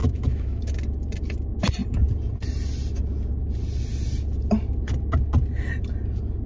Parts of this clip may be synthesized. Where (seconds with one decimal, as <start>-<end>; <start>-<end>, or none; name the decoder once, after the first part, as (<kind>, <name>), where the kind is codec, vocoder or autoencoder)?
0.0-0.6 (autoencoder, DAC-VAE)